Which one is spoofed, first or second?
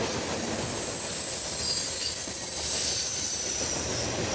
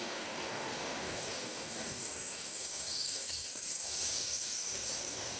second